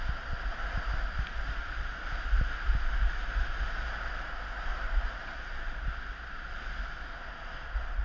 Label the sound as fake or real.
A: real